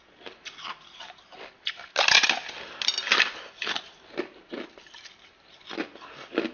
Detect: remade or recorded recorded